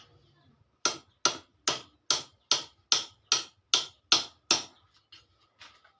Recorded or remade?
recorded